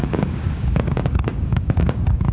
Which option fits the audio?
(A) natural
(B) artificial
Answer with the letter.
B